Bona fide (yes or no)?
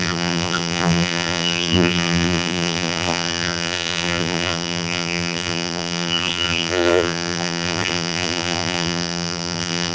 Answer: no